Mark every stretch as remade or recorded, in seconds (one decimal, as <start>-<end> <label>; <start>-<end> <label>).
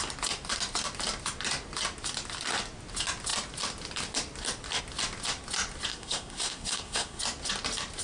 0.0-5.9 recorded; 5.9-7.2 remade; 7.2-8.0 recorded